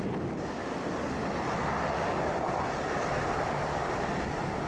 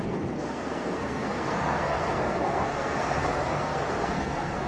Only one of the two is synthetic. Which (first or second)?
second